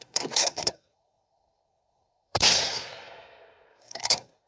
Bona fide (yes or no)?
no